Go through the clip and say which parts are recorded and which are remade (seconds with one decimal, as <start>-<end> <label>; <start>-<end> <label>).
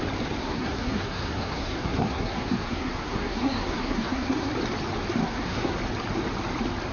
0.0-0.4 recorded; 0.4-4.5 remade; 4.5-5.2 recorded; 5.2-5.8 remade; 5.8-6.9 recorded